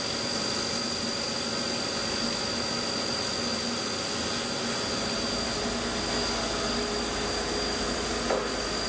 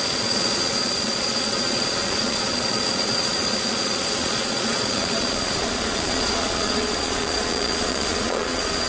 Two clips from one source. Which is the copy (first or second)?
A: second